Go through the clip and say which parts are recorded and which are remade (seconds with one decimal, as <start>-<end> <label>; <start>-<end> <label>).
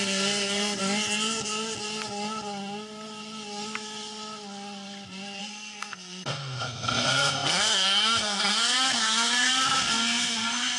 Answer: 0.0-0.8 remade; 0.8-5.4 recorded; 5.4-10.8 remade